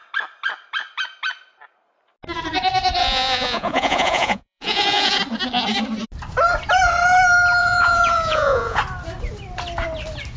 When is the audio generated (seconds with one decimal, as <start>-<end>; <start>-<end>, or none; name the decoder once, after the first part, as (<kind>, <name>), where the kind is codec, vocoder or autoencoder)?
3.0-5.2 (vocoder, Vocos); 7.6-8.8